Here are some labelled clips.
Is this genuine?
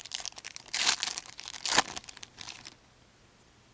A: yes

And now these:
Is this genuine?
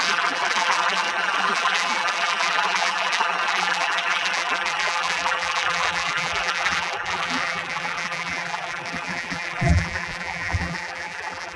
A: no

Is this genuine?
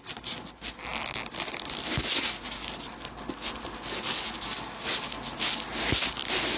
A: yes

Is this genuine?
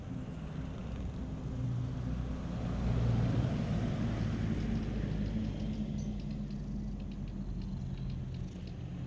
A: yes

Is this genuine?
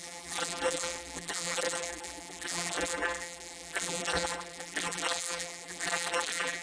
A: no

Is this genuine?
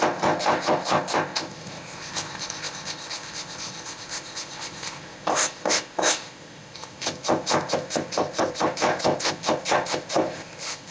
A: no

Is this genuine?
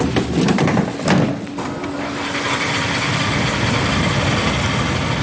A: yes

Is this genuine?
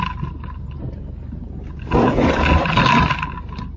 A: yes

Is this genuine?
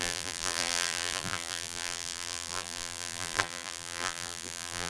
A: no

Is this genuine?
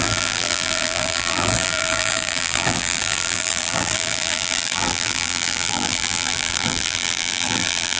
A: no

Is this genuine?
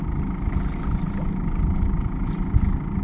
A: yes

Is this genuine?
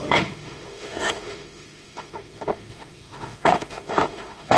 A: no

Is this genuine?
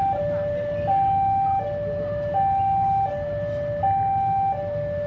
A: yes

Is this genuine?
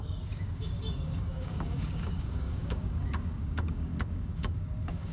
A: no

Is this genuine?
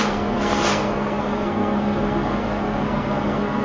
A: no